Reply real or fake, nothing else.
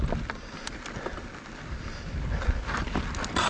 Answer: real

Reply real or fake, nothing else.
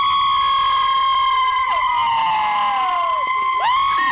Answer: real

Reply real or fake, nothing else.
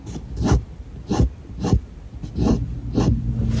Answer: real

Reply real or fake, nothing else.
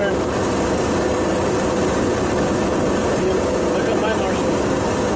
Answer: real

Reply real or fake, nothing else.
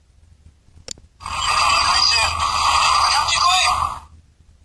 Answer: real